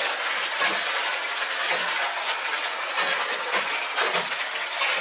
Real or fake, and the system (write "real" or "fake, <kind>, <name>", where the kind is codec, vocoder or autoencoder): real